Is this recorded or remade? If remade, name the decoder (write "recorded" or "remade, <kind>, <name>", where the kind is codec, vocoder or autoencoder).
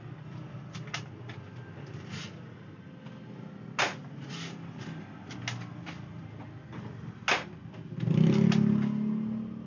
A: recorded